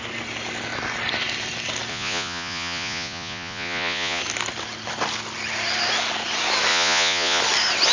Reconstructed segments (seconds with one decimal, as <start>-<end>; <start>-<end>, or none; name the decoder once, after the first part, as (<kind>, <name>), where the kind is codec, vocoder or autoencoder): 1.9-4.2 (vocoder, Vocos); 6.7-7.4